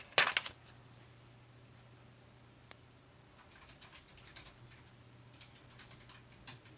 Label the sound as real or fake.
real